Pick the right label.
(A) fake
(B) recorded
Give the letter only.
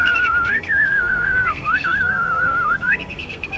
A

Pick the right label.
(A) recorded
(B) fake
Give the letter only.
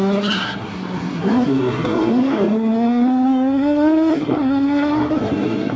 B